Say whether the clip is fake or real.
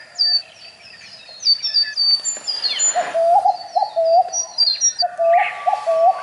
real